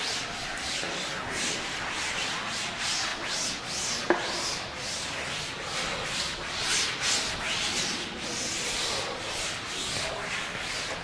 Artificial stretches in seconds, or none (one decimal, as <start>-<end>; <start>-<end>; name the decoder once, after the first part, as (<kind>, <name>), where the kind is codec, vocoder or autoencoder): none